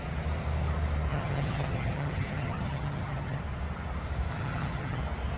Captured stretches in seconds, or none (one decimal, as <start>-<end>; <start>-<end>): 0.0-1.1; 3.4-4.3; 5.0-5.4